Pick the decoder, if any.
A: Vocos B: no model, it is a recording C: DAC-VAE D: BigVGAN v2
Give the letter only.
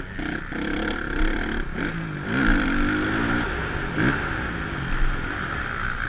B